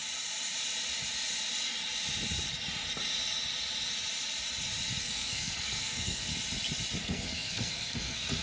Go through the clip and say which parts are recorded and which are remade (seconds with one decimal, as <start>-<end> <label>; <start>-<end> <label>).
0.0-5.0 recorded; 5.0-6.3 remade; 6.3-7.0 recorded; 7.0-8.4 remade